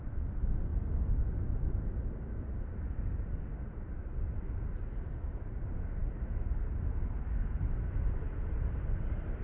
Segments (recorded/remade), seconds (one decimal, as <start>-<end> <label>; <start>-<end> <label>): 0.0-9.4 recorded